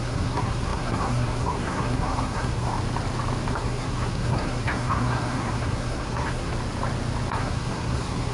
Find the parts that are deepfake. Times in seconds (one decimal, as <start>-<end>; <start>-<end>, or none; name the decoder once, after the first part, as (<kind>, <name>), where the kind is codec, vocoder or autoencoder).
0.0-2.7 (codec, SNAC); 3.5-6.5; 7.3-8.3